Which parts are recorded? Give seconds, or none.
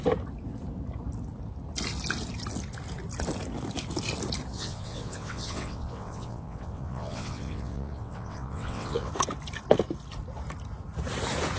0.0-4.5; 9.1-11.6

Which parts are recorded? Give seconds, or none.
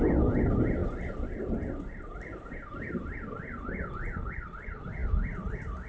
0.0-5.9